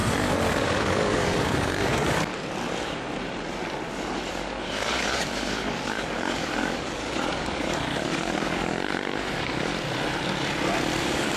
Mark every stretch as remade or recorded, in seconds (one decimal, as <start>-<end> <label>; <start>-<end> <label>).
0.0-0.5 recorded; 0.5-2.3 remade; 2.3-4.3 recorded; 4.3-9.7 remade; 9.7-11.0 recorded; 11.0-11.4 remade